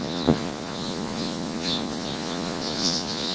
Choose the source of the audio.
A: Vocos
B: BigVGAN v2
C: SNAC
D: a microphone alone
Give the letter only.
A